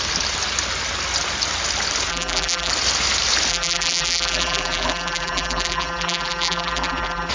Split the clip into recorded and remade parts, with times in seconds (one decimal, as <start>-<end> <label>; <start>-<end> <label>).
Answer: 0.0-2.1 recorded; 2.1-2.7 remade; 2.7-3.5 recorded; 3.5-7.3 remade